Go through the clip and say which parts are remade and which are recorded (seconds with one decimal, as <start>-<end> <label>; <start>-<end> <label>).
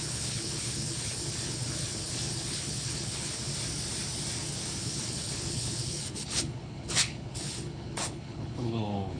0.0-3.5 remade; 3.5-4.8 recorded; 4.8-9.2 remade